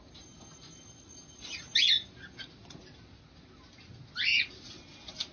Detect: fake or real real